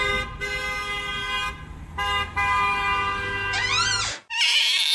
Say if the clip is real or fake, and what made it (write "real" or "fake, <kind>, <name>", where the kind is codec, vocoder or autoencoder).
real